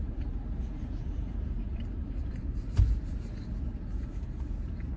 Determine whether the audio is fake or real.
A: fake